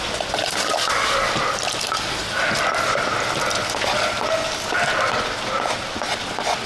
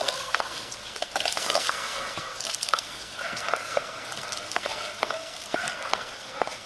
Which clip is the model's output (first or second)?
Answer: second